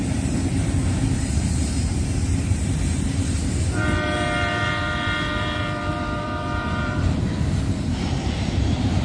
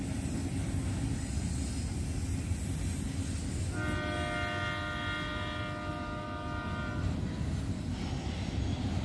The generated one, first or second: first